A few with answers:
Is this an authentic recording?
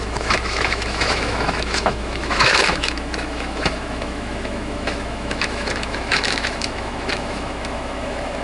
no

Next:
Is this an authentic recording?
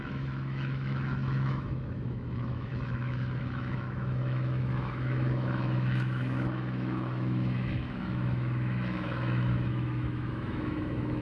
no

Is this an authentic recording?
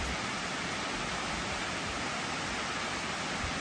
yes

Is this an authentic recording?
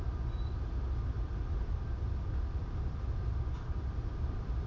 yes